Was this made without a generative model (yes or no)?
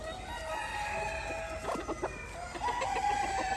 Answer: yes